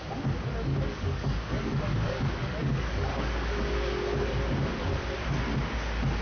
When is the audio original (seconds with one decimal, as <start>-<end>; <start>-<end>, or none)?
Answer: 0.0-0.7; 4.4-6.2